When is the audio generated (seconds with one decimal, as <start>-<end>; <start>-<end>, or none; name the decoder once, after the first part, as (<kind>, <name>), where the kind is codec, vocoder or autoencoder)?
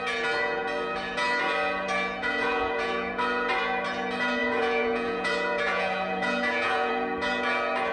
2.2-3.1 (vocoder, Vocos); 4.4-6.9